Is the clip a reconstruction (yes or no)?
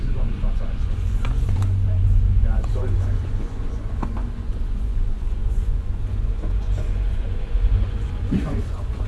yes